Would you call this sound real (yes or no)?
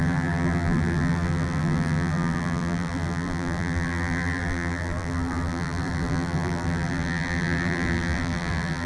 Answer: no